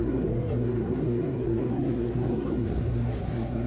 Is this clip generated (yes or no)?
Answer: yes